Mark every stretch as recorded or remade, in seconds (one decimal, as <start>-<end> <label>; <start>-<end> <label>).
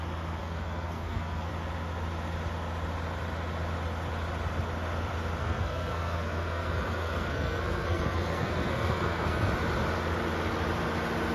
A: 0.0-0.4 recorded; 0.4-1.5 remade; 1.5-5.4 recorded; 5.4-9.5 remade; 9.5-11.3 recorded